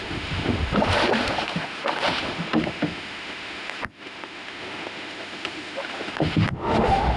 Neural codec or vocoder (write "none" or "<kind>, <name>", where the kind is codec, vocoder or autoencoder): autoencoder, DAC-VAE